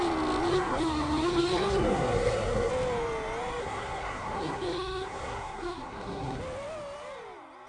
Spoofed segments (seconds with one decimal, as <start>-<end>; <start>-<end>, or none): 0.5-2.7; 3.6-6.4